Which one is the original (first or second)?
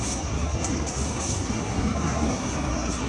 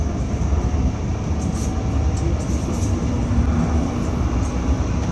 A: second